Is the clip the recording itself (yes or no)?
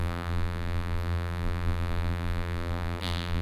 no